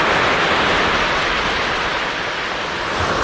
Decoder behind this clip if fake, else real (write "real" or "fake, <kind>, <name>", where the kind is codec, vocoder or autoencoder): real